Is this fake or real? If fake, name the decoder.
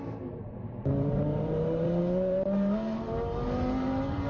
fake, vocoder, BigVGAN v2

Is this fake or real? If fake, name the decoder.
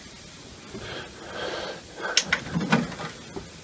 real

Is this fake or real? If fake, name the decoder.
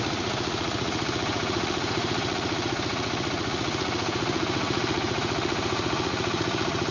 fake, vocoder, Vocos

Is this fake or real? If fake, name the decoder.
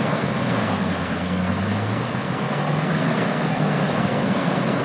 fake, codec, SNAC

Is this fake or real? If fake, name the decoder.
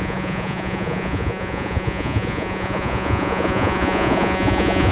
fake, vocoder, Vocos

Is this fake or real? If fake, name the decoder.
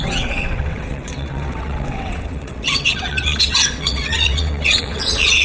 fake, vocoder, WaveNeXt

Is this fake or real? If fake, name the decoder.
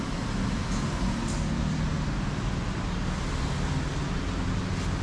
real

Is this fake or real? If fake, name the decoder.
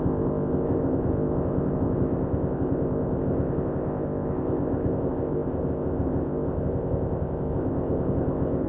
fake, codec, ZipCodec